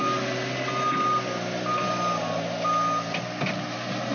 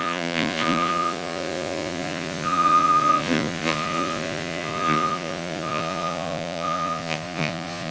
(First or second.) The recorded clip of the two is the first